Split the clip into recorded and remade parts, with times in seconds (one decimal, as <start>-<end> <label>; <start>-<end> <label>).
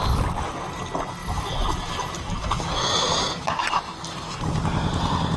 0.0-1.2 recorded; 1.2-4.4 remade; 4.4-5.4 recorded